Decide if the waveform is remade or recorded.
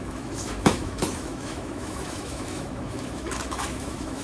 remade